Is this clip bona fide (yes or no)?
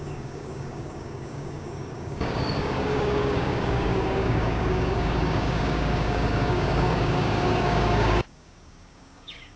no